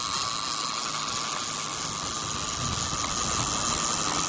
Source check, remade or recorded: recorded